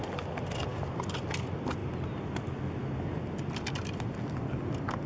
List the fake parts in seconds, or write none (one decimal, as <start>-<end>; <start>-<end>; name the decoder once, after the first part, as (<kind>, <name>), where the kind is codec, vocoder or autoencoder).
none